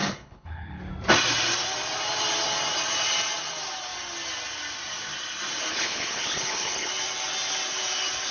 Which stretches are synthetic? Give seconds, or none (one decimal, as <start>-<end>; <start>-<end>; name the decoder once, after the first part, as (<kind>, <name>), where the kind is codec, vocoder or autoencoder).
0.0-0.8 (codec, HILCodec); 5.7-6.9